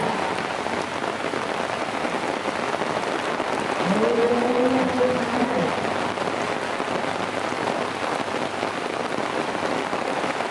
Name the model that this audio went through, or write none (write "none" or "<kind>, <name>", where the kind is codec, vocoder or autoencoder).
none